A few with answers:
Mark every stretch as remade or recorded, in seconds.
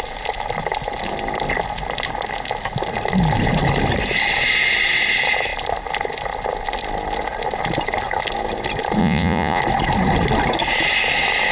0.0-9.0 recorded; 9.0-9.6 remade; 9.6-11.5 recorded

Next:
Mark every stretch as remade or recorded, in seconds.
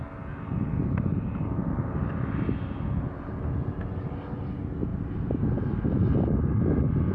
0.0-7.1 recorded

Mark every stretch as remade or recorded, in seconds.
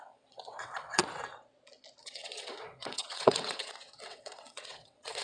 0.0-1.0 remade; 1.0-2.0 recorded; 2.0-5.2 remade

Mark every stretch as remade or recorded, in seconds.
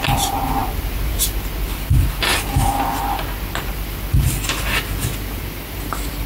0.0-6.3 recorded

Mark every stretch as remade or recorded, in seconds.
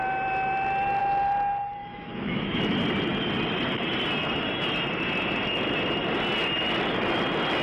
0.0-1.8 recorded; 1.8-2.6 remade; 2.6-7.6 recorded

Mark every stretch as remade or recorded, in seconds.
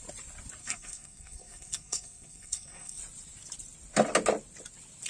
0.0-0.6 recorded; 0.6-3.0 remade; 3.0-5.1 recorded